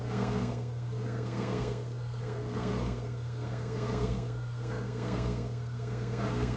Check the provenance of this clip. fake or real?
fake